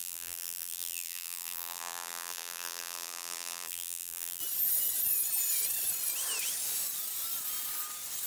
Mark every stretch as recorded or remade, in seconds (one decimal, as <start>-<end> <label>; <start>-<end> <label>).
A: 0.0-4.4 remade; 4.4-8.3 recorded